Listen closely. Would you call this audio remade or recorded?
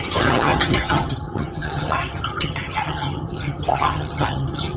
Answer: remade